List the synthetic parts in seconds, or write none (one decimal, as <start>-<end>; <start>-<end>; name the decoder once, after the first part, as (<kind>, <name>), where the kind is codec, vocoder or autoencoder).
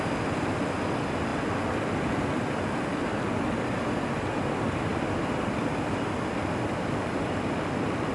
none